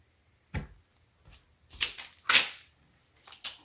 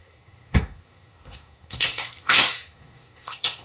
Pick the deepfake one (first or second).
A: second